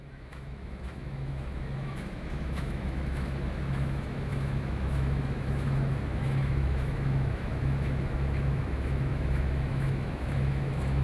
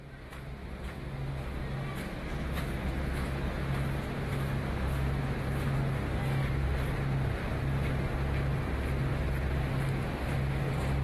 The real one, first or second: second